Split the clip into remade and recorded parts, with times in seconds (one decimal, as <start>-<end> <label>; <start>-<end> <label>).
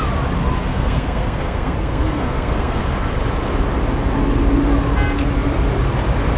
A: 0.0-0.7 recorded; 0.7-2.8 remade; 2.8-6.4 recorded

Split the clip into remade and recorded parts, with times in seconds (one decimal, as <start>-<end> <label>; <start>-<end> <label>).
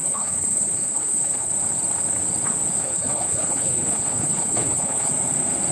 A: 0.0-1.5 remade; 1.5-2.8 recorded; 2.8-5.1 remade; 5.1-5.7 recorded